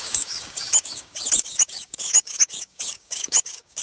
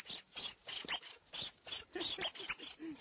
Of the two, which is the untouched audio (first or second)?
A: second